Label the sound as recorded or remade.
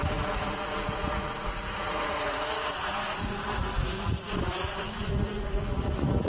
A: remade